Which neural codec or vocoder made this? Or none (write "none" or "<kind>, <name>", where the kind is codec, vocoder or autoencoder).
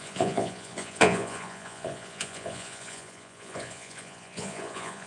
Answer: vocoder, Vocos